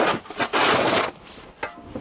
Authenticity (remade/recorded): recorded